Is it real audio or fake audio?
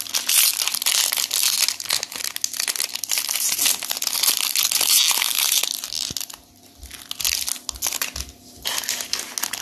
real